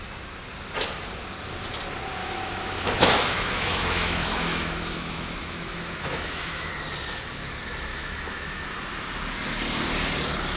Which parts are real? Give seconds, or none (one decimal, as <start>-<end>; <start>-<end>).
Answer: 0.0-2.2; 6.7-7.9; 8.6-10.6